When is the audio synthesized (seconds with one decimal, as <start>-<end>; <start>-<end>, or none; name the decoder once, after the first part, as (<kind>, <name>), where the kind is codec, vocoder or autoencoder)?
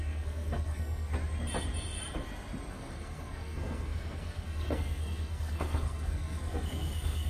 0.0-1.1 (codec, SNAC); 2.7-7.3